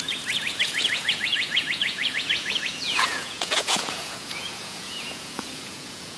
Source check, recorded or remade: remade